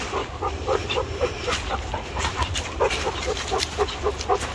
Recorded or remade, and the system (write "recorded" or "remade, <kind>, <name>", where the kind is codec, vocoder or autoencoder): remade, vocoder, BigVGAN v2